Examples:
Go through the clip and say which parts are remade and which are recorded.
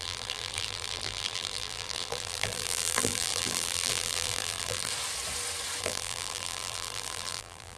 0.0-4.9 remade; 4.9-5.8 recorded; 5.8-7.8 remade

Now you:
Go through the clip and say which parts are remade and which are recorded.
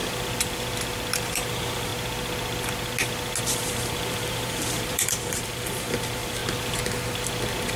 0.0-1.2 recorded; 1.2-1.9 remade; 1.9-3.4 recorded; 3.4-6.4 remade; 6.4-7.8 recorded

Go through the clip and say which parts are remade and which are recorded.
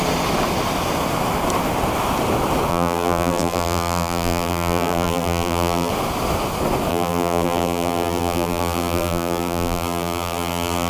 0.0-2.7 recorded; 2.7-5.9 remade; 5.9-6.9 recorded; 6.9-10.9 remade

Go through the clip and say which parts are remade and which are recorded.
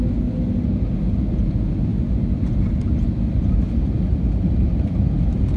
0.0-1.9 recorded; 1.9-5.6 remade